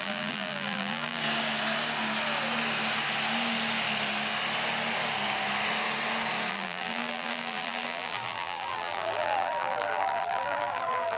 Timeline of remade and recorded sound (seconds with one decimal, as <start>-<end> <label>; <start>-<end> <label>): 0.0-1.2 remade; 1.2-6.5 recorded; 6.5-11.2 remade